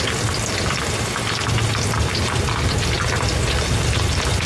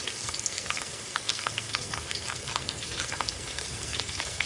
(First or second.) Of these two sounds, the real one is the first